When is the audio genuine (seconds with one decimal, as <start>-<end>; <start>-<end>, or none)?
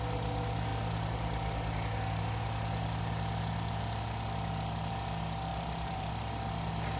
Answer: 0.0-5.5; 6.1-7.0